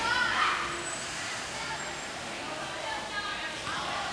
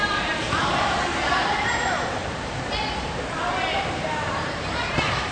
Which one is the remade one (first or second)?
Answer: second